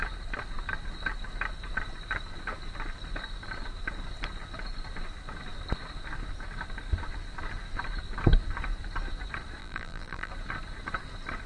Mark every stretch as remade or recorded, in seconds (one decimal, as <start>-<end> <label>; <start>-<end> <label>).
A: 0.0-9.6 recorded; 9.6-10.3 remade; 10.3-11.5 recorded